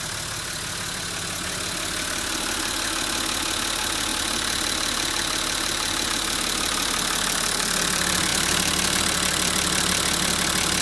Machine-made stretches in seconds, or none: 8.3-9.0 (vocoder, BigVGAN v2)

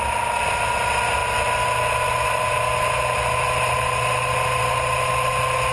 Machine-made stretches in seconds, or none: none

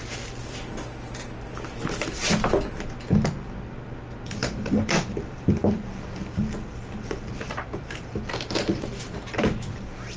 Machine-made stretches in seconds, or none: 4.4-9.0 (vocoder, BigVGAN v2)

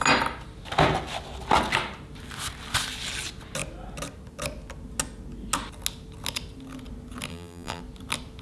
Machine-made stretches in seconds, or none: 7.3-7.8 (vocoder, BigVGAN v2)

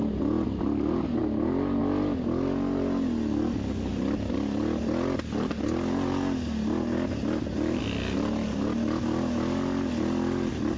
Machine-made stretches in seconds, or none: none

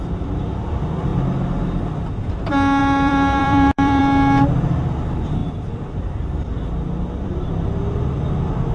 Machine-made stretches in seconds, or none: 2.8-4.0 (vocoder, BigVGAN v2); 5.4-7.5

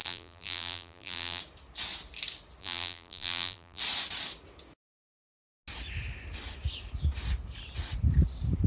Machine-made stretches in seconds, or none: 0.0-1.4 (vocoder, BigVGAN v2); 2.6-3.8

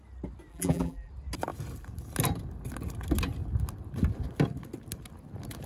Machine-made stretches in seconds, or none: 0.5-1.1 (vocoder, BigVGAN v2)